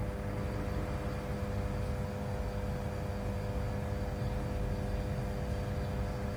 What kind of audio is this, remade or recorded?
recorded